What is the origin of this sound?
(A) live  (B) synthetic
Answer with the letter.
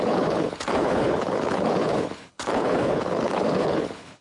B